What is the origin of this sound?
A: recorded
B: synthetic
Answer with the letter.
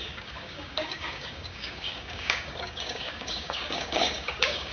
B